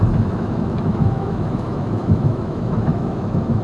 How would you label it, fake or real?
fake